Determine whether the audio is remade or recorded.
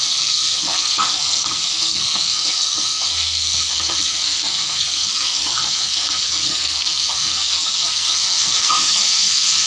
remade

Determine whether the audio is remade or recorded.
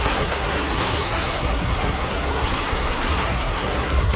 remade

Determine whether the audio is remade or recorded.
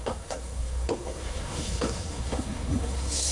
remade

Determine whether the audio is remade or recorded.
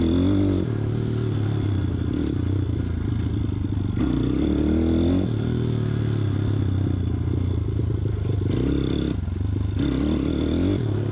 recorded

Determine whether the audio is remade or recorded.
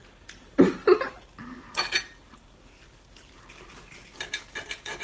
recorded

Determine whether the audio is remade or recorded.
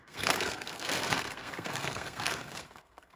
remade